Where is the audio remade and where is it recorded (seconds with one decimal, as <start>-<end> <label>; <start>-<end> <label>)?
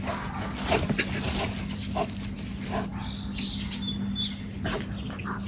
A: 0.0-5.5 recorded